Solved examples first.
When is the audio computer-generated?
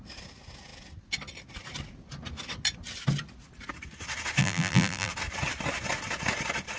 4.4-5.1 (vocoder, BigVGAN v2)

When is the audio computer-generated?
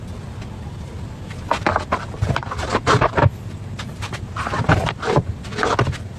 1.6-5.3 (vocoder, BigVGAN v2)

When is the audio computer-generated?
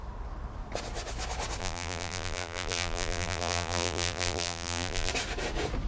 1.6-5.1 (vocoder, BigVGAN v2)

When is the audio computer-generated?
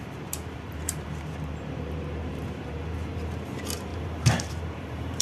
0.0-5.2 (vocoder, BigVGAN v2)